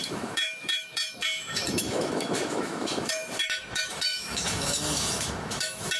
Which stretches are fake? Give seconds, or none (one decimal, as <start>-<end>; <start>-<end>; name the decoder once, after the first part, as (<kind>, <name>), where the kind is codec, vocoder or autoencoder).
0.0-6.0 (autoencoder, DAC-VAE)